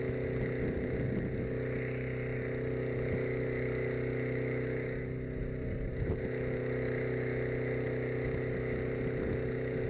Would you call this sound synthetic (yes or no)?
no